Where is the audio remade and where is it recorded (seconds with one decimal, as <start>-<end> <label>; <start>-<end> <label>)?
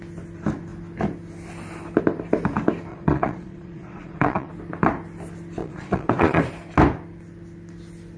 0.0-2.9 recorded; 2.9-4.5 remade; 4.5-5.6 recorded; 5.6-6.4 remade; 6.4-8.2 recorded